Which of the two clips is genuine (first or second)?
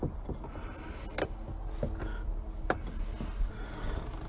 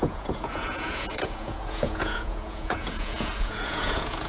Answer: first